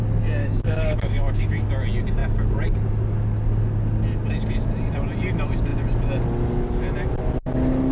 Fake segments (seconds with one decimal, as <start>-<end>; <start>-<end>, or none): 0.4-1.5